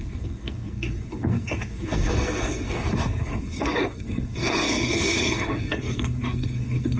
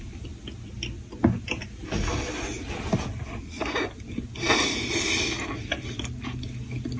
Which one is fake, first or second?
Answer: first